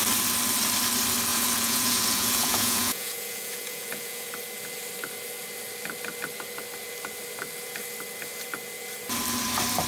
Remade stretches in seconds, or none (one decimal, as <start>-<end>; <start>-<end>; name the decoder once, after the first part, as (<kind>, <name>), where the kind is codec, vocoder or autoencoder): 1.3-4.3 (vocoder, Vocos)